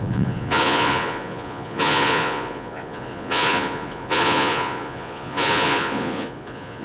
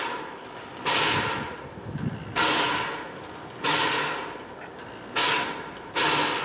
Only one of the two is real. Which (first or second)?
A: second